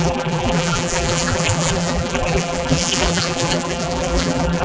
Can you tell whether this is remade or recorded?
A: remade